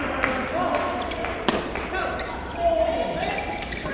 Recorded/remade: remade